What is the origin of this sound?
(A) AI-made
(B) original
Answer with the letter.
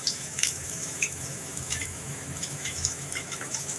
A